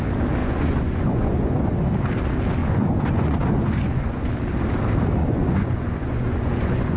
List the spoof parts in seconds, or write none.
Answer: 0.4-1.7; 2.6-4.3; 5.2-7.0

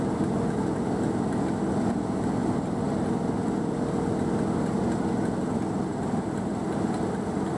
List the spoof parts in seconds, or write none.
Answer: none

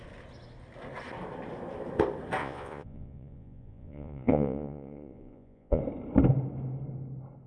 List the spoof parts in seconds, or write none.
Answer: 2.4-5.8

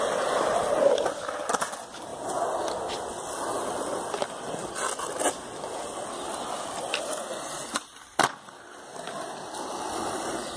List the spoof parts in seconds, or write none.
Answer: none

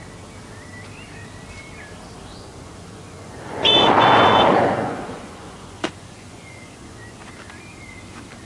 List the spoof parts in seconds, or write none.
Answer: 2.3-7.2